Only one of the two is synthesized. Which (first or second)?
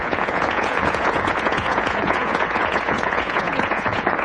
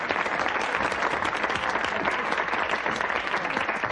first